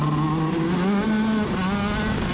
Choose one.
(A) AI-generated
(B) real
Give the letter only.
B